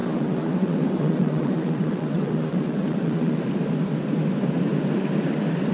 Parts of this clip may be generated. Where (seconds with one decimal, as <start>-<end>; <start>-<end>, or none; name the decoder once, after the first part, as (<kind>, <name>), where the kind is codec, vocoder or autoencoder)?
0.0-3.4 (vocoder, WaveNeXt)